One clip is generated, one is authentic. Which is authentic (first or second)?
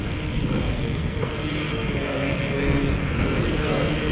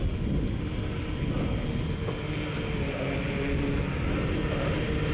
second